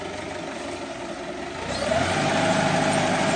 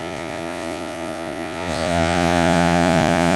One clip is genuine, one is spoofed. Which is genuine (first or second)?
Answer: first